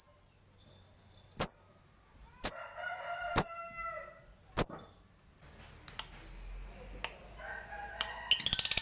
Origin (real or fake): real